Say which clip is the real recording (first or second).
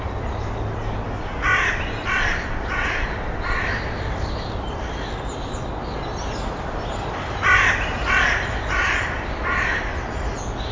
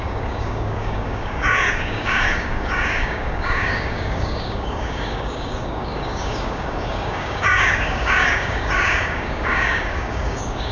first